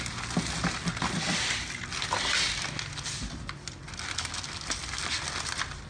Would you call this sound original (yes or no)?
yes